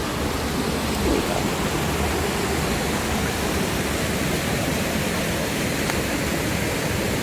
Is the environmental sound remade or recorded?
recorded